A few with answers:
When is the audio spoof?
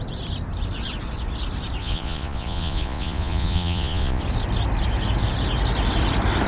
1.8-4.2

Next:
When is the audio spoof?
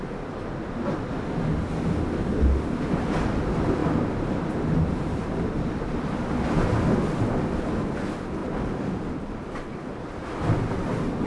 3.8-5.8; 8.4-9.0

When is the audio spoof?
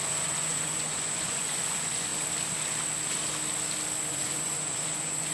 0.0-2.1; 4.1-5.3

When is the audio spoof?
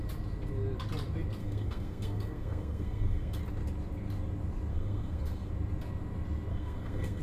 1.4-3.4; 4.7-5.5; 6.5-7.2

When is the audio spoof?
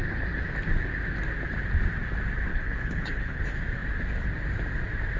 2.5-3.4